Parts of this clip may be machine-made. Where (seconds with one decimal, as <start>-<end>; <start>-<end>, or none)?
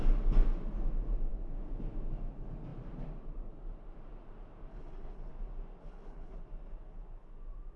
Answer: 4.7-5.3; 5.8-6.4